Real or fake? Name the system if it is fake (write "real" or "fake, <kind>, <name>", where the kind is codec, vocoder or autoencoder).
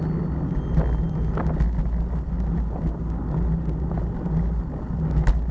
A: real